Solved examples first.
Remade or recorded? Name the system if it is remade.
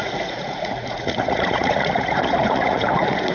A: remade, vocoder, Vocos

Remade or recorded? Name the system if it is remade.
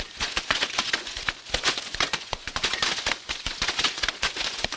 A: remade, vocoder, Vocos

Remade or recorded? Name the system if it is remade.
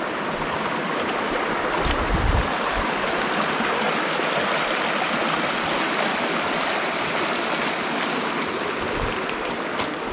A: recorded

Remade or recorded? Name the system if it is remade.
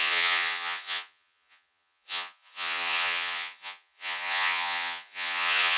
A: remade, vocoder, Vocos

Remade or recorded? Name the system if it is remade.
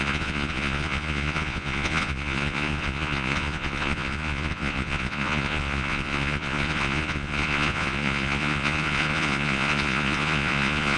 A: remade, vocoder, Vocos